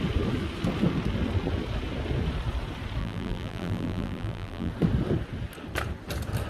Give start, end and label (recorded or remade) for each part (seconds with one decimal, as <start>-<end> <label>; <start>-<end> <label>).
0.0-3.0 recorded; 3.0-4.7 remade; 4.7-6.5 recorded